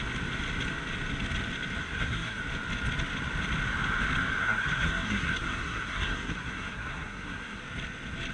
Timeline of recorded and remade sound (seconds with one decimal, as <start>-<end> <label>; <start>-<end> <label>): 0.0-1.8 recorded; 1.8-2.4 remade; 2.4-4.4 recorded; 4.4-7.6 remade; 7.6-8.3 recorded